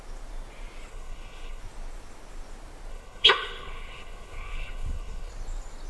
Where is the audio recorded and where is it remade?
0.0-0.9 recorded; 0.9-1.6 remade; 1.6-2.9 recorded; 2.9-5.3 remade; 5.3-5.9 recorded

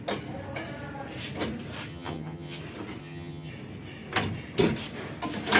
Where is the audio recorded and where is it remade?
0.0-1.9 recorded; 1.9-2.6 remade; 2.6-3.0 recorded; 3.0-3.5 remade; 3.5-5.6 recorded

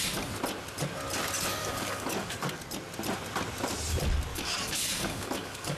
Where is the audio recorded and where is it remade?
0.0-1.6 recorded; 1.6-2.6 remade; 2.6-4.3 recorded; 4.3-5.8 remade

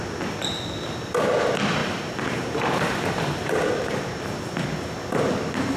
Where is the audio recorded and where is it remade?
0.0-1.8 recorded; 1.8-4.4 remade; 4.4-5.8 recorded